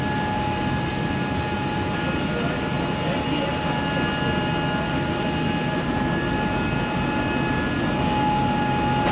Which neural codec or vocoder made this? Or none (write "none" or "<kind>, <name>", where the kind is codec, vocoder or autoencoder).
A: none